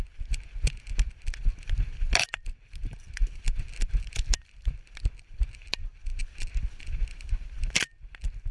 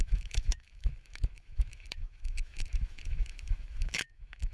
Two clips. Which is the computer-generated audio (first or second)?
second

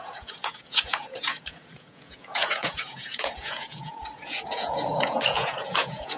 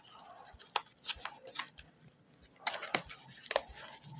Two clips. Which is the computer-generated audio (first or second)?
first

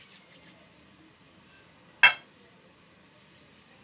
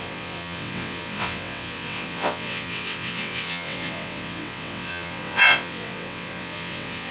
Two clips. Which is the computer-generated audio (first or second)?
second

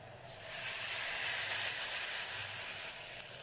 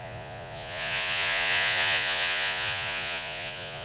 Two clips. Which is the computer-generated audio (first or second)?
second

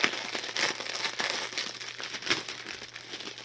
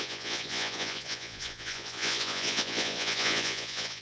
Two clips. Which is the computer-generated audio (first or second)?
second